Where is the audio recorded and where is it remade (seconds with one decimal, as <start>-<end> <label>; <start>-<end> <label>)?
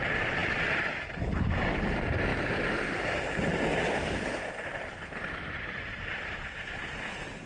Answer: 0.0-7.5 recorded